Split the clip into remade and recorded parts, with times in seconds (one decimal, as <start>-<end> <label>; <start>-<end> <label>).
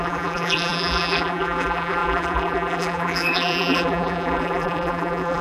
0.0-5.4 remade